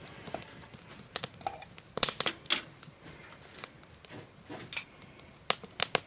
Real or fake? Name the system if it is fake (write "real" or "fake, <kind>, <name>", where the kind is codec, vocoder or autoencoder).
real